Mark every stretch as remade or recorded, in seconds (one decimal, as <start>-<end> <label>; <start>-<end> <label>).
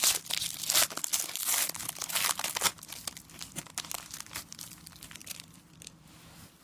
0.0-5.2 recorded; 5.2-6.6 remade